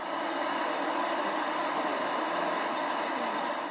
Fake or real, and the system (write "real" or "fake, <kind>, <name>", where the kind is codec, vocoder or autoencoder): real